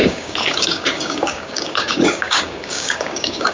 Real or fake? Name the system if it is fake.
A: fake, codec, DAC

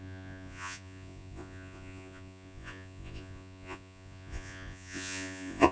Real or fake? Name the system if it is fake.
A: fake, vocoder, Vocos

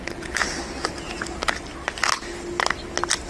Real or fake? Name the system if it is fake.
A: real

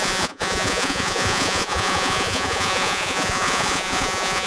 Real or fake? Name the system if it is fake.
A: fake, vocoder, Vocos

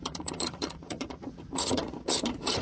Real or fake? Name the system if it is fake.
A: fake, vocoder, Vocos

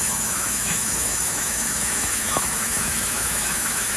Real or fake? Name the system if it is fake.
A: fake, autoencoder, DAC-VAE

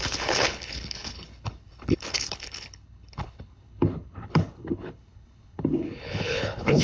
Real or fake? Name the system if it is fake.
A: fake, codec, HILCodec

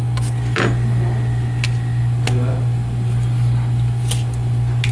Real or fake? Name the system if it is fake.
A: real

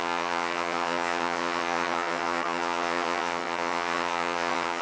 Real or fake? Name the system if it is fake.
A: fake, vocoder, HiFi-GAN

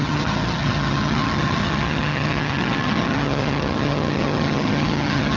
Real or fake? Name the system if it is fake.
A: fake, vocoder, HiFi-GAN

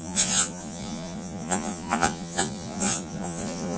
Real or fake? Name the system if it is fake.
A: fake, vocoder, Vocos